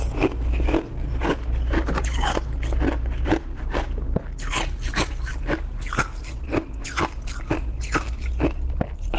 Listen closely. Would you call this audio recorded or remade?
recorded